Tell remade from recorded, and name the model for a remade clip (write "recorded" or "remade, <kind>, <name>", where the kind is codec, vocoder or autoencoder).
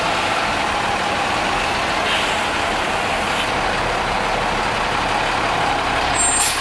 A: recorded